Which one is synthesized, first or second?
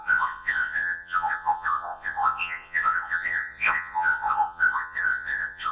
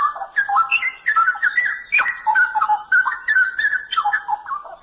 first